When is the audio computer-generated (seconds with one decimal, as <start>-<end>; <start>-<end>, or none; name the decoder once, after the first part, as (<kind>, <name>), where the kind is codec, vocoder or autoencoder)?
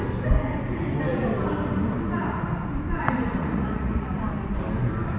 3.4-4.2 (vocoder, Vocos)